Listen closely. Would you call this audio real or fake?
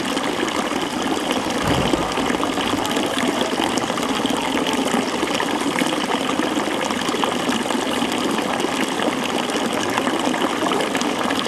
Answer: real